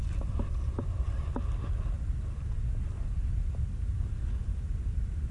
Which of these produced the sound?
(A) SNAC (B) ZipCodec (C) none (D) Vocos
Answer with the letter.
C